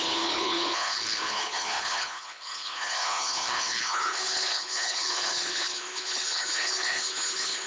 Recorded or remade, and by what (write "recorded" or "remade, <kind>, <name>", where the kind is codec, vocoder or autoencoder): remade, codec, HILCodec